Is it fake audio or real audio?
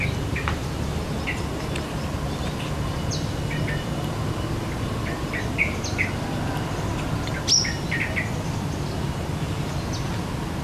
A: real